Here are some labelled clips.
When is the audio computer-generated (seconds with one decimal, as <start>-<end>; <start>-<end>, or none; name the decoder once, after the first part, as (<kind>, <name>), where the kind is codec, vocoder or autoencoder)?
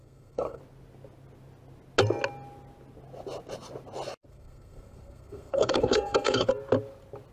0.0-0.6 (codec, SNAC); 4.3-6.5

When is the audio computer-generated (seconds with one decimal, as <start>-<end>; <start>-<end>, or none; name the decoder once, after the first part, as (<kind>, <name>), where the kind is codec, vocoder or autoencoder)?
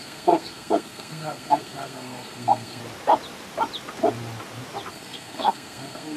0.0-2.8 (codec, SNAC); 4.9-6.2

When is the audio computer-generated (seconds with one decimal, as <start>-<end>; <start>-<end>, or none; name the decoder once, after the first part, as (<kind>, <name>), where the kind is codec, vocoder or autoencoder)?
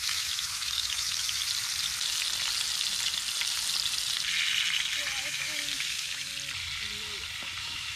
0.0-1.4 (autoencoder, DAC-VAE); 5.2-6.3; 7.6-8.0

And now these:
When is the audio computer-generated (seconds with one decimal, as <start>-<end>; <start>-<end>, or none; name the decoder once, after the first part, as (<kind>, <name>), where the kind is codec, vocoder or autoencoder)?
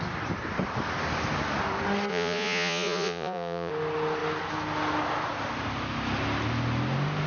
2.1-3.7 (vocoder, Vocos)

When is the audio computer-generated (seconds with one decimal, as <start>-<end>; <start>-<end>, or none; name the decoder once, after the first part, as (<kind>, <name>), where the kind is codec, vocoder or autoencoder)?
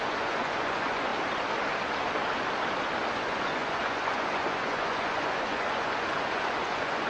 0.0-1.1 (vocoder, Vocos); 3.1-7.1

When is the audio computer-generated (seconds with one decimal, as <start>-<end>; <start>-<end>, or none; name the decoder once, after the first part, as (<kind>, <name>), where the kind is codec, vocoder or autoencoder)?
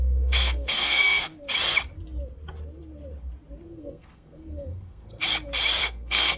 0.0-1.3 (codec, SNAC); 3.7-5.2; 5.8-6.4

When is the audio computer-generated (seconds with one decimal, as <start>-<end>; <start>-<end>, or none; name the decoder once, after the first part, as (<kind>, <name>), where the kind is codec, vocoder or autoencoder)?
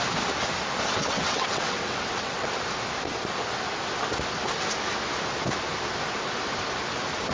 1.0-2.5 (vocoder, WaveNeXt)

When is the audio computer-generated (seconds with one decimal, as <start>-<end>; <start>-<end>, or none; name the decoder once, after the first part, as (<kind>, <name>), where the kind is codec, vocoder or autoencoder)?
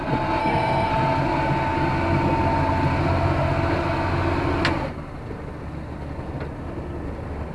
0.4-0.9 (codec, SNAC)